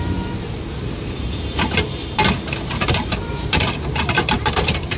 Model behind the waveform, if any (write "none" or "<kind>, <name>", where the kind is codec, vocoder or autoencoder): vocoder, BigVGAN v2